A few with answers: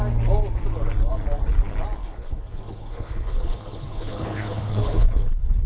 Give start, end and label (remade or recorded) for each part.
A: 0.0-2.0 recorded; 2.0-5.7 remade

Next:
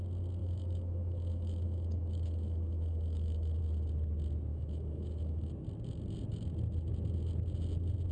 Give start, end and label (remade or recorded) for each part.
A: 0.0-0.4 recorded; 0.4-3.6 remade; 3.6-4.5 recorded; 4.5-5.5 remade; 5.5-8.1 recorded

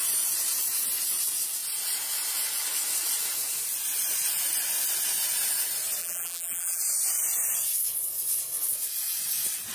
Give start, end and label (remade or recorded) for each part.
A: 0.0-6.0 recorded; 6.0-6.8 remade; 6.8-9.7 recorded